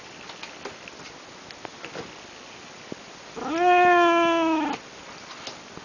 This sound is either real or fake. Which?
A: real